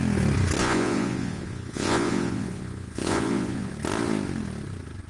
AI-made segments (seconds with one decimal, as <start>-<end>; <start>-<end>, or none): 0.6-3.7